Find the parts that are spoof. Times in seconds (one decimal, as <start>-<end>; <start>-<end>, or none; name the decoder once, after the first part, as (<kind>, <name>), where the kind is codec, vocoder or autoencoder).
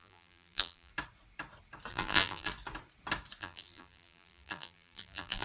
0.0-0.9 (vocoder, BigVGAN v2); 1.9-2.5; 3.4-5.4